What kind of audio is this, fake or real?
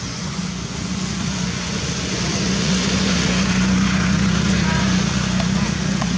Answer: fake